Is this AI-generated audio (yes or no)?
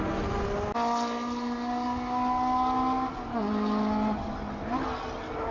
no